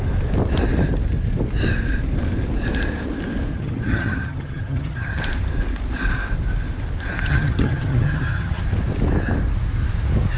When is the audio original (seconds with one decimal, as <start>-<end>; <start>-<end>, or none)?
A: 0.0-3.5; 5.2-7.3; 8.6-10.4